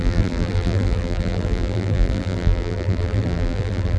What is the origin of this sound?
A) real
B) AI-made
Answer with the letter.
B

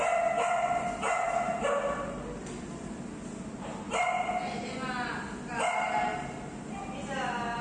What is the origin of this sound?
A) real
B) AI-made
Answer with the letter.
A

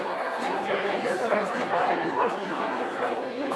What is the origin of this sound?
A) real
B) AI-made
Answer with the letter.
B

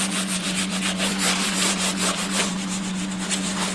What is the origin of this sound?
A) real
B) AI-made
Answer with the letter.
B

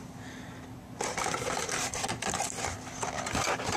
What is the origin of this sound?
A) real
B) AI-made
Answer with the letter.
A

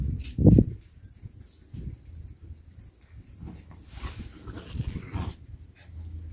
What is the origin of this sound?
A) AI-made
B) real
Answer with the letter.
B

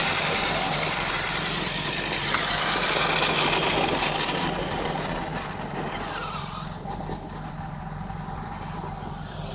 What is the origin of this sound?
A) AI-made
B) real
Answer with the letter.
A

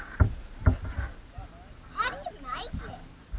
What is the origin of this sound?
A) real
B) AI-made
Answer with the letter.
A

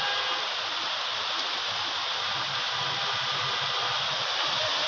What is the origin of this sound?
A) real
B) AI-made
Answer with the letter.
A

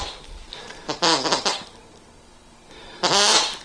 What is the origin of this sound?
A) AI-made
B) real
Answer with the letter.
B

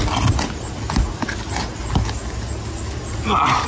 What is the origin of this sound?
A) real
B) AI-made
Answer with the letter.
A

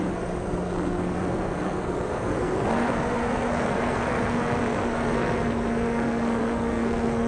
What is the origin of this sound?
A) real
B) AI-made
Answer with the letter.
B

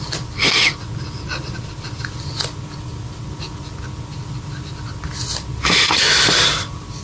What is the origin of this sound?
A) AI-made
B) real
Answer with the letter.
B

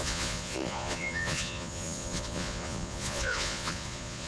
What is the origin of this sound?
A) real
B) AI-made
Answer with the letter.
B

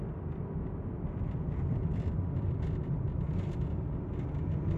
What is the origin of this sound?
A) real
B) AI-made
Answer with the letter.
A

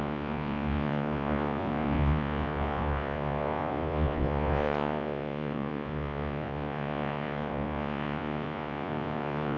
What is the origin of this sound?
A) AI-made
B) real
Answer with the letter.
A